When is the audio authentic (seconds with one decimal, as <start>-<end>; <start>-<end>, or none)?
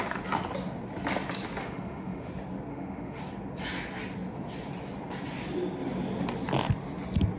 0.0-1.6; 2.3-2.7; 3.2-7.4